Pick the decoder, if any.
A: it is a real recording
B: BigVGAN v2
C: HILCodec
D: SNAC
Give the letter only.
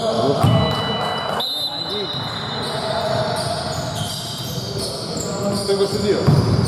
A